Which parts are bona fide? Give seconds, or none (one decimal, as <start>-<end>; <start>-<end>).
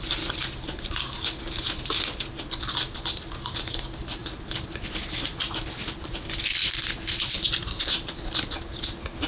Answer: 0.0-9.3